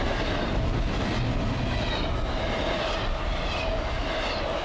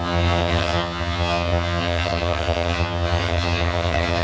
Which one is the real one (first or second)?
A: first